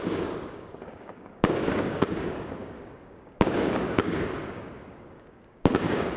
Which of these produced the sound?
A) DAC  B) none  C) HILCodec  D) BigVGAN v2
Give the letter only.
A